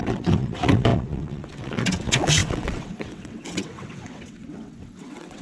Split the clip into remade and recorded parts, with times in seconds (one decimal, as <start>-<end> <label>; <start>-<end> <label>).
0.0-5.4 remade